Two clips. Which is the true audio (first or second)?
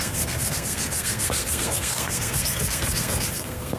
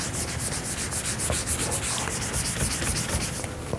second